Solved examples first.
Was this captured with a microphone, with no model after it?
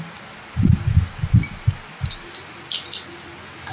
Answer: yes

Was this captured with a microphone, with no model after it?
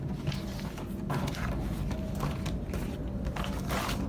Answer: yes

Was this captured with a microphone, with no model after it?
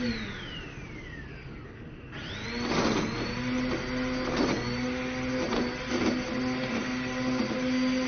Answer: yes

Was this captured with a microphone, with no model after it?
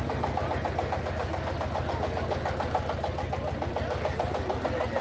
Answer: yes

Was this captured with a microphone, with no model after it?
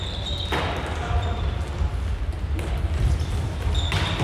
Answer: yes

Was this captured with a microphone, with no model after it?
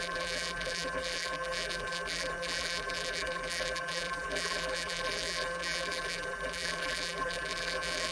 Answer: no